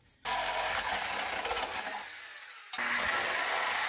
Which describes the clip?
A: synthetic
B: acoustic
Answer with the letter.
B